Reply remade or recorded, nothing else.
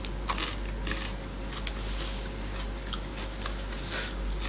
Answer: recorded